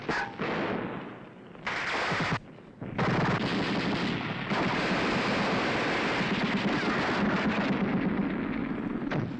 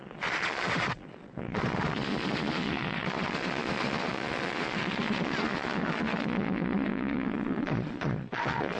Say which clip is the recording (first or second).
first